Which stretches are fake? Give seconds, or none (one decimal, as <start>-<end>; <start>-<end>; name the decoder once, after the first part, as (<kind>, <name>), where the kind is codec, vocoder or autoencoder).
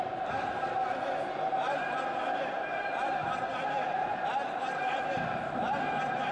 0.0-6.3 (vocoder, BigVGAN v2)